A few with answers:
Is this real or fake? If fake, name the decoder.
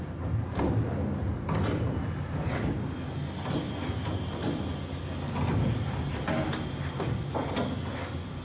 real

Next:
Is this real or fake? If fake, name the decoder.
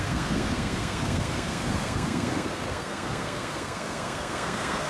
fake, codec, SNAC